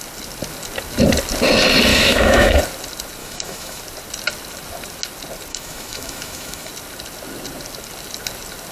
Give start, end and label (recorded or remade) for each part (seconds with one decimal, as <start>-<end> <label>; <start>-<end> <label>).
0.0-1.9 recorded; 1.9-2.6 remade; 2.6-3.2 recorded; 3.2-3.8 remade; 3.8-5.5 recorded; 5.5-6.7 remade; 6.7-8.7 recorded